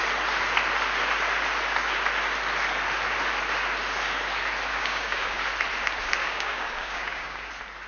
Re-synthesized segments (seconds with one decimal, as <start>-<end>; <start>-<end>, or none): 4.7-5.4; 6.2-7.5